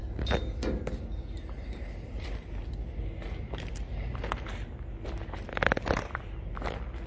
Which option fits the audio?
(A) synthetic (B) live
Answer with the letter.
B